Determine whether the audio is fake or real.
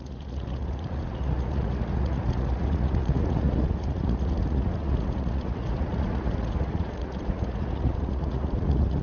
fake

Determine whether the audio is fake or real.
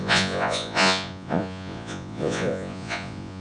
fake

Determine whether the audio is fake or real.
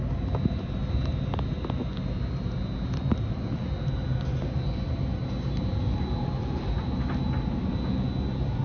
real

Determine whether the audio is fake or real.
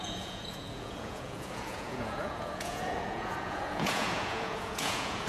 fake